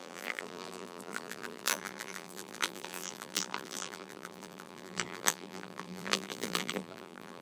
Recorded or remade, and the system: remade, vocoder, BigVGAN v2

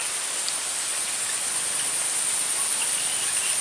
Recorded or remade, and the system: recorded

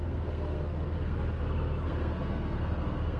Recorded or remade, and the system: remade, codec, SNAC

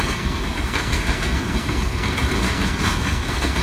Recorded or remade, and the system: remade, codec, SNAC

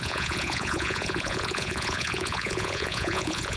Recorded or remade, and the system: remade, vocoder, Vocos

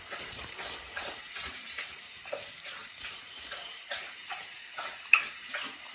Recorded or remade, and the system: remade, vocoder, BigVGAN v2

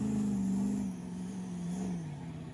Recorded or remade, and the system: recorded